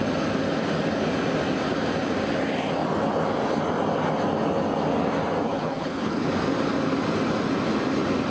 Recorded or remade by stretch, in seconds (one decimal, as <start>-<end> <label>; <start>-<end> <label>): 0.0-5.5 recorded; 5.5-6.3 remade; 6.3-8.3 recorded